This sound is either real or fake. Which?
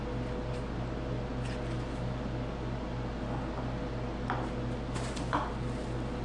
real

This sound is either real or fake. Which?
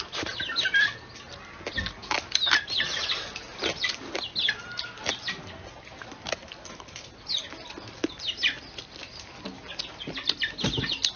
real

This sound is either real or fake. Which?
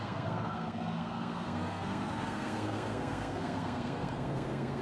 fake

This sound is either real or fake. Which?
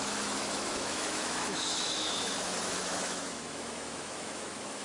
fake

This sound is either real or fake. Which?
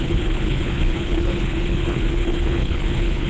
fake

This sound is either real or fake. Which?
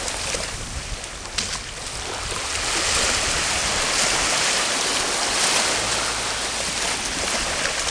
real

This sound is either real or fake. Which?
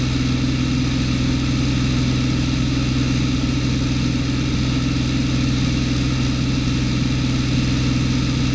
real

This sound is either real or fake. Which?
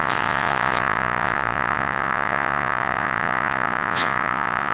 fake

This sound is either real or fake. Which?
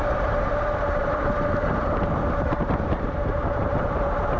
fake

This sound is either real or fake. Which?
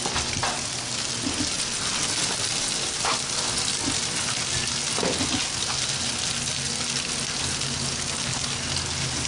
real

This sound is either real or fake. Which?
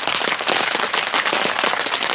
real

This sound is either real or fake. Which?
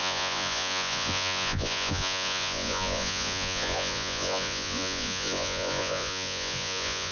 fake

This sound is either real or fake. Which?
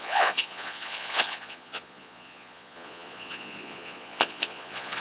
fake